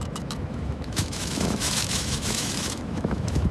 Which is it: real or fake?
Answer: fake